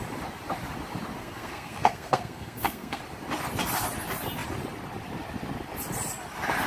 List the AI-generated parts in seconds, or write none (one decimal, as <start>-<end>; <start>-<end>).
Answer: 1.2-3.0